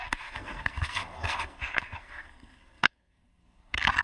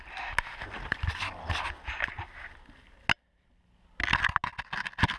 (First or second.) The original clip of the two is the second